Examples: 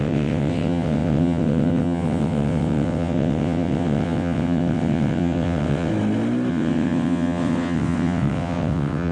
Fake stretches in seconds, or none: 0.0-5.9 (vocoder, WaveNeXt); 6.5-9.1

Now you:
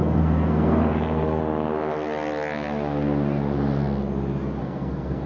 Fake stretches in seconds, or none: 0.0-1.4 (codec, SNAC); 4.6-5.3

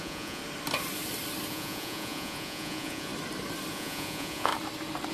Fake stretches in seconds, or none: 0.0-0.4 (vocoder, Vocos); 1.5-3.1; 3.7-4.5

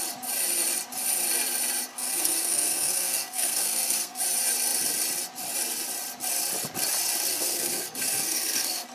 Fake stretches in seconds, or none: 1.9-4.2 (codec, SNAC); 7.3-8.9

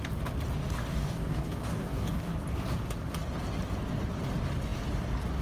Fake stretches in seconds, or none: 0.8-2.2 (codec, DAC)

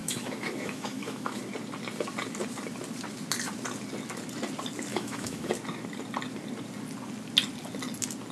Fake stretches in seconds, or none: 0.0-1.4 (autoencoder, DAC-VAE); 4.9-5.5